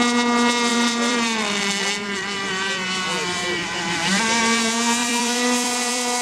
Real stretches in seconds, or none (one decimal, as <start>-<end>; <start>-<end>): 0.0-0.7; 4.4-5.0